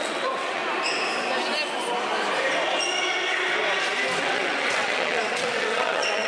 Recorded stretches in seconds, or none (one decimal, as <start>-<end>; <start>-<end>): 0.6-4.2